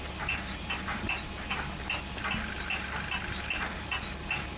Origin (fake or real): real